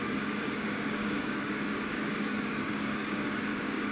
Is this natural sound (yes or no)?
no